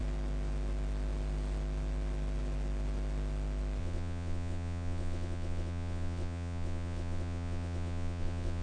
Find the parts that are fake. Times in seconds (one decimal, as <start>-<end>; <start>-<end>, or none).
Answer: 3.8-8.6